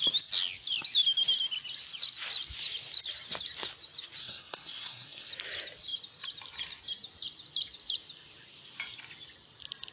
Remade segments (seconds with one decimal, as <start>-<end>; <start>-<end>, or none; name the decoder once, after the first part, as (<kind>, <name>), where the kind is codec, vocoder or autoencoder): 4.2-5.3 (codec, SNAC)